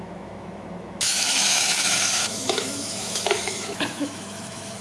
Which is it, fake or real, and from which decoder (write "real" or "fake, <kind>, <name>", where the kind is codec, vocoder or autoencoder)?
fake, autoencoder, DAC-VAE